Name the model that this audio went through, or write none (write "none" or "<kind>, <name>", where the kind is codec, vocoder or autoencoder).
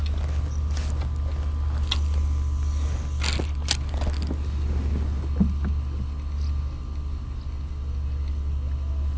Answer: none